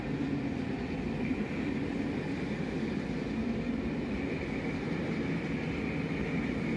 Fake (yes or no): no